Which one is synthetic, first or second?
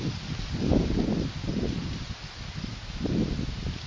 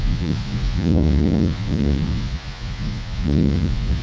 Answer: second